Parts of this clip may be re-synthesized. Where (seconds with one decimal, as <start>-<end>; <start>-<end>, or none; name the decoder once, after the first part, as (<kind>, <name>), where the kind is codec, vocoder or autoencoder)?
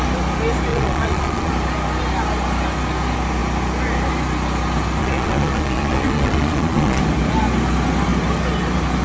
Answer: 0.7-1.5 (vocoder, Vocos); 5.0-7.0